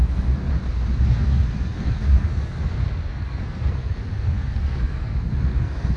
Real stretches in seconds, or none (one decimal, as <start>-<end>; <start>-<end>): 0.5-1.1